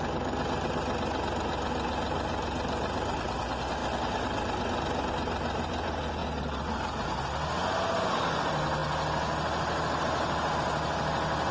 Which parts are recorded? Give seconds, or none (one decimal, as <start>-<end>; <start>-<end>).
0.0-11.5